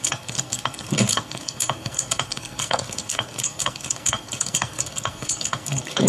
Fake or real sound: fake